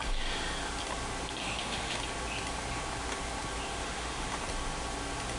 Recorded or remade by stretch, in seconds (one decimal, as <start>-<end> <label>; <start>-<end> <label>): 0.0-1.4 recorded; 1.4-2.0 remade; 2.0-3.7 recorded; 3.7-4.4 remade; 4.4-5.4 recorded